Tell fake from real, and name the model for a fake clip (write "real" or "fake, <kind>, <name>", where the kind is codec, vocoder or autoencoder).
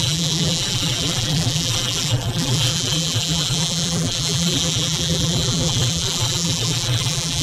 fake, vocoder, BigVGAN v2